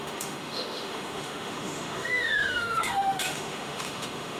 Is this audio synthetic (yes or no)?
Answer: yes